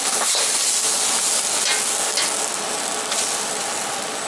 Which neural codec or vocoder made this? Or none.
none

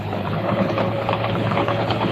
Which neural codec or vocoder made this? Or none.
codec, HILCodec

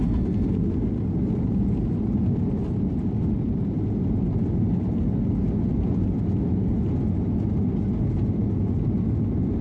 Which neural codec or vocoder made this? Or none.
none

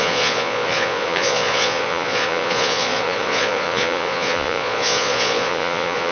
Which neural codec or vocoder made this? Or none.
vocoder, Vocos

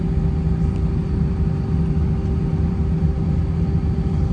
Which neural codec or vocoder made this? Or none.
none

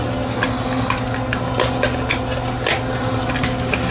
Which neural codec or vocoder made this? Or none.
none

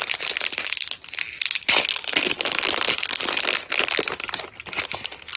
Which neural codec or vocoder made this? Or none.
vocoder, BigVGAN v2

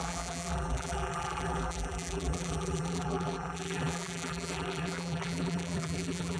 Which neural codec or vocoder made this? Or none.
vocoder, BigVGAN v2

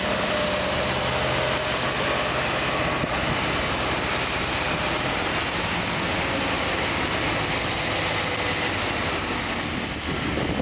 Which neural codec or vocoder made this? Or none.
none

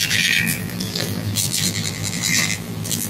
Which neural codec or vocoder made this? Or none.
vocoder, BigVGAN v2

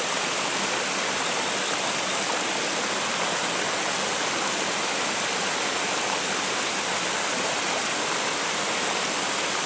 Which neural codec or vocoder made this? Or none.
none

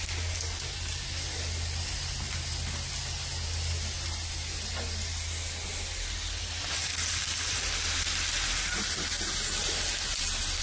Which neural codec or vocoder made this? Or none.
none